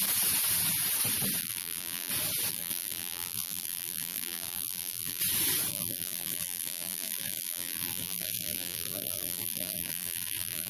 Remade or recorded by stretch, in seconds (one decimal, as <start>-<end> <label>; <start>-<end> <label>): 0.0-1.4 recorded; 1.4-2.1 remade; 2.1-2.5 recorded; 2.5-5.2 remade; 5.2-5.7 recorded; 5.7-10.7 remade